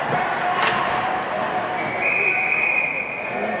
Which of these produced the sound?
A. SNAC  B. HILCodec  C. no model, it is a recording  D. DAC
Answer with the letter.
C